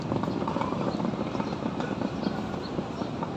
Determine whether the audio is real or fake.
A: fake